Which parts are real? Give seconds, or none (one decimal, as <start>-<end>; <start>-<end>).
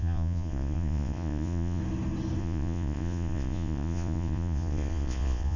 1.8-2.4